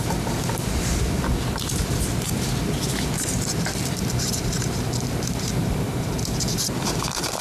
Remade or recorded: remade